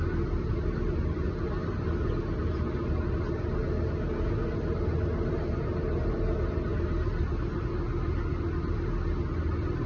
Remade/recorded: recorded